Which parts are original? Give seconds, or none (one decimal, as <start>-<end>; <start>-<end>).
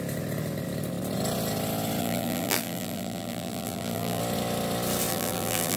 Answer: 0.0-2.0; 4.2-5.1